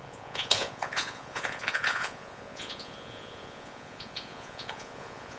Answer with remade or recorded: remade